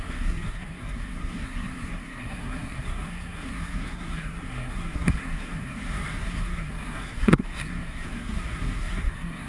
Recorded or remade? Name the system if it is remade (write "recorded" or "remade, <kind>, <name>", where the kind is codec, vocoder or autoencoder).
remade, codec, SNAC